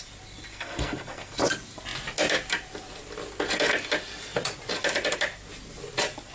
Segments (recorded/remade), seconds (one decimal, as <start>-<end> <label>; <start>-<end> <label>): 0.0-0.5 recorded; 0.5-1.4 remade; 1.4-6.3 recorded